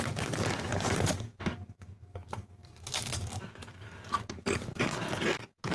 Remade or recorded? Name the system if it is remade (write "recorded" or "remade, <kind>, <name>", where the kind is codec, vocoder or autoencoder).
remade, codec, DAC